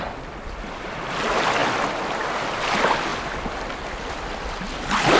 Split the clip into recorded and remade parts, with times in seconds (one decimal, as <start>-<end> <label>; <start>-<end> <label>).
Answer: 0.0-5.2 recorded